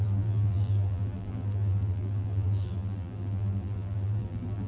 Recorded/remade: remade